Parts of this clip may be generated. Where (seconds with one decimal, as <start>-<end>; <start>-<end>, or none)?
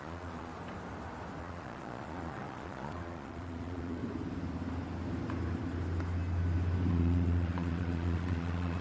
0.0-0.5; 1.4-4.0; 6.9-8.8